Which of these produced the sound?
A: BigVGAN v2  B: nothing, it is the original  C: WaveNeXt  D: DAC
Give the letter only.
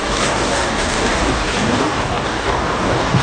D